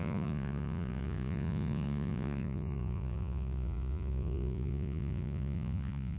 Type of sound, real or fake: fake